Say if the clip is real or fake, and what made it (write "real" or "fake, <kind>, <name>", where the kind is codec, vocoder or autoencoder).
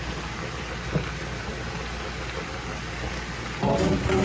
real